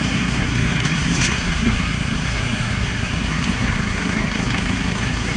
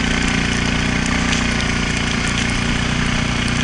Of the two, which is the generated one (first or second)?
first